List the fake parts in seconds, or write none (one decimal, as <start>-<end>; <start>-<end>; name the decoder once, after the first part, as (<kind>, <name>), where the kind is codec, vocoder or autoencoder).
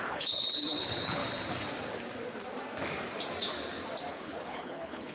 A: 0.0-1.2 (codec, HILCodec); 4.1-5.1